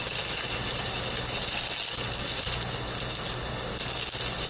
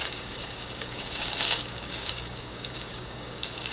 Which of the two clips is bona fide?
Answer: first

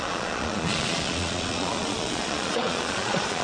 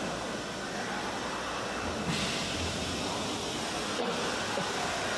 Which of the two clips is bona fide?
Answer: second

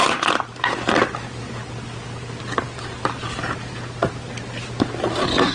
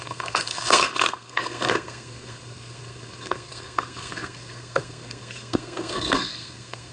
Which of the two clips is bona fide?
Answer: first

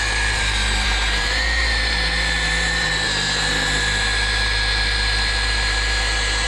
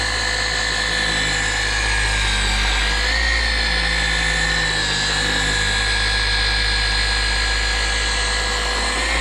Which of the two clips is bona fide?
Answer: second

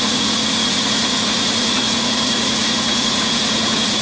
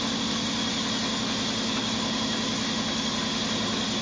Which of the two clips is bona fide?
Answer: second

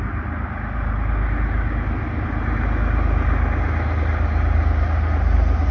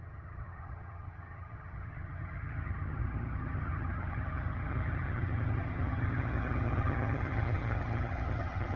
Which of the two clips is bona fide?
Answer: first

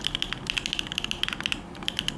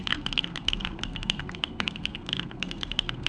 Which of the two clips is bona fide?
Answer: first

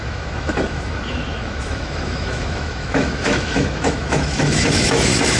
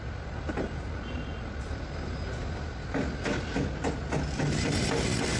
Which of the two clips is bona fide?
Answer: second